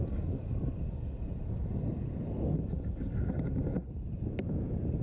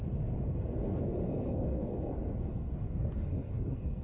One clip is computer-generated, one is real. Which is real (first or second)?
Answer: first